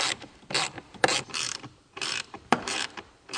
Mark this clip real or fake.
fake